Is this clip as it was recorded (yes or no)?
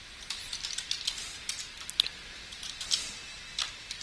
yes